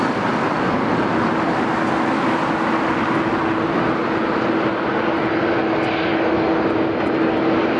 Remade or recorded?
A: recorded